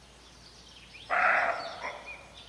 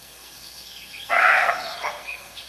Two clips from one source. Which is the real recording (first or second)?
first